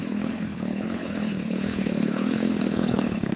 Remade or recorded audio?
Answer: remade